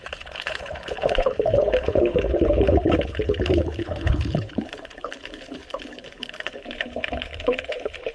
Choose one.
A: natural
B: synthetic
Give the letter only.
B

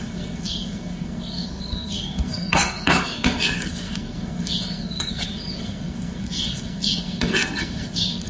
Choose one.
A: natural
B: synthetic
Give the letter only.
B